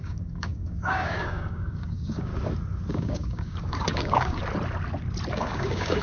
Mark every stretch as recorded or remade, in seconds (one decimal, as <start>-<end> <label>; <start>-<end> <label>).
0.0-2.3 remade; 2.3-2.9 recorded; 2.9-4.4 remade; 4.4-5.3 recorded; 5.3-6.0 remade